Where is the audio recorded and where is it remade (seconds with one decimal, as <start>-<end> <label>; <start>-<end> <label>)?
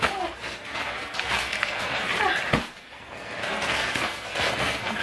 0.0-2.1 remade; 2.1-2.6 recorded; 2.6-5.0 remade